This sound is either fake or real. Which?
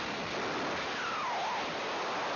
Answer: real